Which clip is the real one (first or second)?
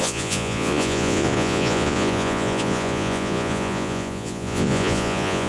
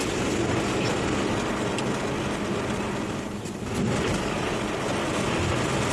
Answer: second